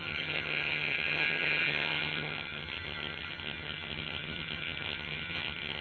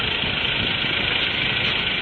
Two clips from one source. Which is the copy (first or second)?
first